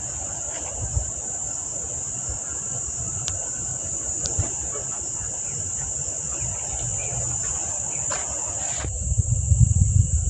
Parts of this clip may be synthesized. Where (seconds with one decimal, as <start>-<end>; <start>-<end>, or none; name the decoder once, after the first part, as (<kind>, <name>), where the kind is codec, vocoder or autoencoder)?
0.7-1.2 (vocoder, BigVGAN v2); 2.5-5.9; 6.9-7.7